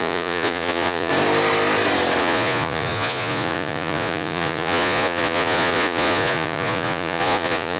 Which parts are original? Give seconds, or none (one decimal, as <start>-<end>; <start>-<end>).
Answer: 1.1-2.2